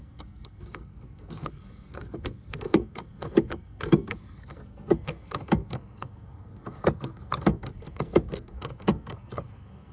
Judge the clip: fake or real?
fake